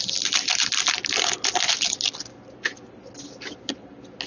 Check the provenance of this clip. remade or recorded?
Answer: recorded